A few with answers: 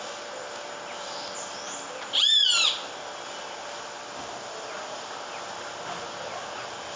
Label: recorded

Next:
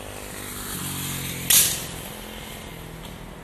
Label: recorded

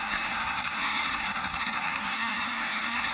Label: remade